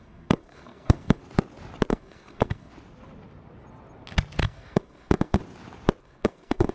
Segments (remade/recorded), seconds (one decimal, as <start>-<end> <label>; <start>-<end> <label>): 0.0-1.2 remade; 1.2-1.9 recorded; 1.9-2.7 remade; 2.7-4.4 recorded; 4.4-5.4 remade; 5.4-6.0 recorded; 6.0-6.7 remade